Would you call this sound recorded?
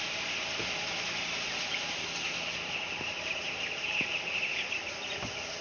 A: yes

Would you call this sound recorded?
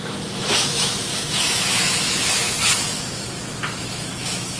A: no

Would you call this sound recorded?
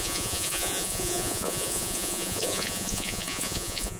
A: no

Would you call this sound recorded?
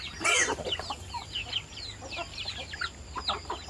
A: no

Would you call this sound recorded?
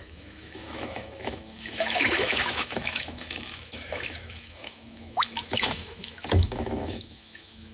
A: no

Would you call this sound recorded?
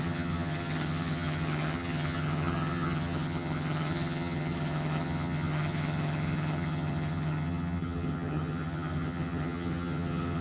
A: no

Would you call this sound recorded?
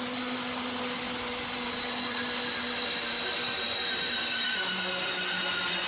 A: yes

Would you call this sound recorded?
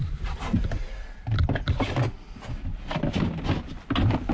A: yes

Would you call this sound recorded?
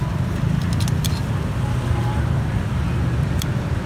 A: yes